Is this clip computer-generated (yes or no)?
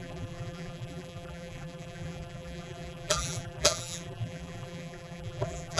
yes